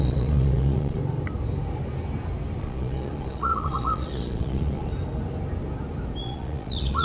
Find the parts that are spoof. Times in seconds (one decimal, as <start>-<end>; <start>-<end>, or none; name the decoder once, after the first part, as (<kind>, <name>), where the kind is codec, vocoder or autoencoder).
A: 0.0-1.0 (vocoder, Vocos); 2.6-4.9; 6.2-7.0